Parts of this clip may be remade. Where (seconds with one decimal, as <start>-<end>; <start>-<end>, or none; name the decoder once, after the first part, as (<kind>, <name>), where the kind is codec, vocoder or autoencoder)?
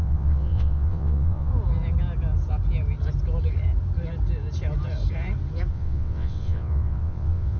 0.0-1.5 (vocoder, WaveNeXt); 5.7-7.6